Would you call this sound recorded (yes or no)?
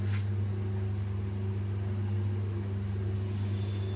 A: yes